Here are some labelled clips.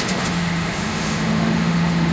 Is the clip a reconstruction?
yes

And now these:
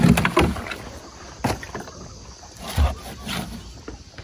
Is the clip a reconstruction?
no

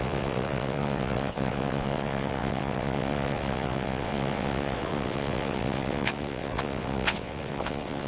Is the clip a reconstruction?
yes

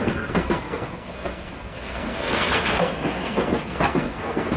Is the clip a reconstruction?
yes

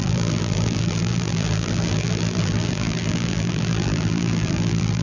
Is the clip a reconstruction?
yes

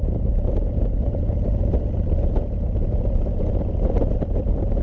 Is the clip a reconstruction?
no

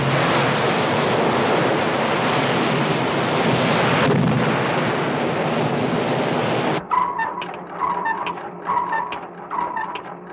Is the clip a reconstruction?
no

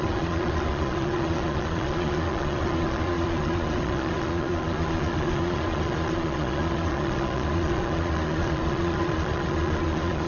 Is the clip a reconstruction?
yes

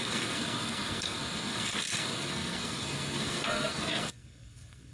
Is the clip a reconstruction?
yes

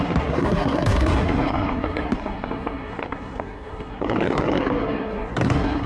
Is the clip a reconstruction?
yes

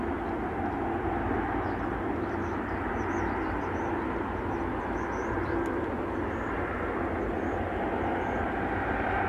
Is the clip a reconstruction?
no